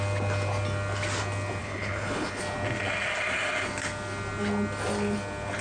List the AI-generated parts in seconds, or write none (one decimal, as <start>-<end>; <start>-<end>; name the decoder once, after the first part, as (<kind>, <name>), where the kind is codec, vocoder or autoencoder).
1.6-2.4 (codec, HILCodec)